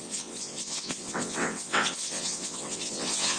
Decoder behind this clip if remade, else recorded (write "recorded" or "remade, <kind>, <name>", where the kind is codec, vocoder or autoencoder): remade, vocoder, WaveNeXt